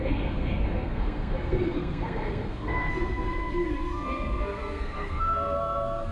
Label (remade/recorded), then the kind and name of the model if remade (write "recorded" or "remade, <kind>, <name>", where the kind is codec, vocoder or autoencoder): remade, codec, SNAC